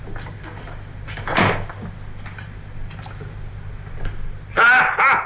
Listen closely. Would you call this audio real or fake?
real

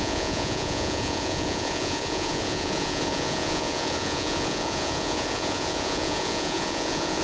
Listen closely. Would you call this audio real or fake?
fake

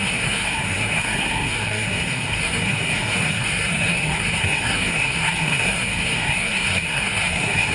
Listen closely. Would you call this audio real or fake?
fake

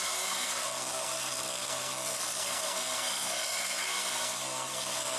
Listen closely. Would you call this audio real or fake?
fake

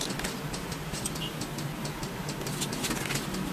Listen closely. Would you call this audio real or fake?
real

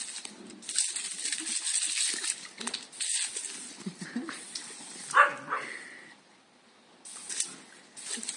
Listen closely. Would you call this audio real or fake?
real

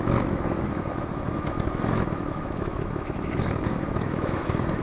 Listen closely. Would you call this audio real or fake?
fake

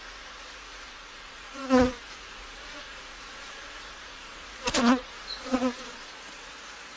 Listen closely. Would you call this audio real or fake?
fake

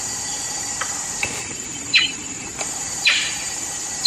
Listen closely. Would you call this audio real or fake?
fake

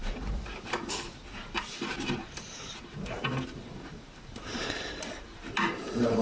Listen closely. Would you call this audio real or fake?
fake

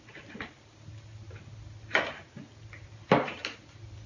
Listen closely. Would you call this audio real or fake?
real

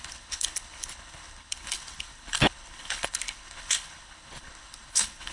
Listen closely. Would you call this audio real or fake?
fake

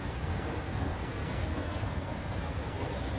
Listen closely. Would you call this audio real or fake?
fake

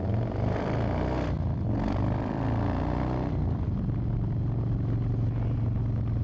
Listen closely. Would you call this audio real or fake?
real